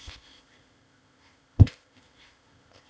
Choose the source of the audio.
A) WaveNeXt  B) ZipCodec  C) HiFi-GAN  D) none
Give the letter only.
B